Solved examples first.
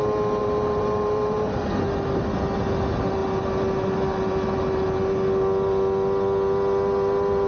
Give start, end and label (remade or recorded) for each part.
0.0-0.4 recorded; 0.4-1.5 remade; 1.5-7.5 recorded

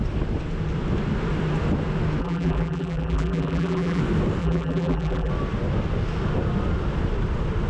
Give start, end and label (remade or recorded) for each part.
0.0-2.2 recorded; 2.2-4.0 remade; 4.0-4.4 recorded; 4.4-5.3 remade; 5.3-7.7 recorded

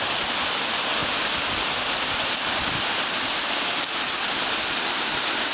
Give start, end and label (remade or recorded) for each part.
0.0-5.5 recorded

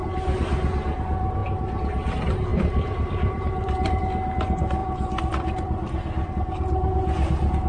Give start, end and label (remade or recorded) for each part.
0.0-2.5 recorded; 2.5-4.0 remade; 4.0-4.8 recorded; 4.8-6.3 remade; 6.3-7.7 recorded

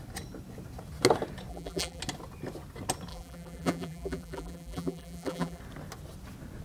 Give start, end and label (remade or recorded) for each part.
0.0-1.5 recorded; 1.5-2.0 remade; 2.0-3.1 recorded; 3.1-5.6 remade; 5.6-6.6 recorded

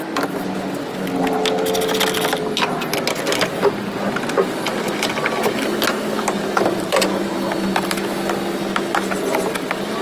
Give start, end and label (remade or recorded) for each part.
0.0-10.0 recorded